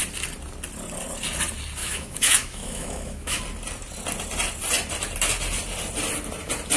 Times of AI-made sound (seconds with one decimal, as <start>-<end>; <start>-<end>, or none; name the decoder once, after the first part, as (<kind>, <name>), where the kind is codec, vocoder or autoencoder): 1.8-3.4 (autoencoder, DAC-VAE)